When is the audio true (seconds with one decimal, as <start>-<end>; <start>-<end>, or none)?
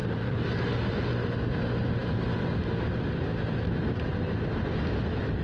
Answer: 0.0-5.4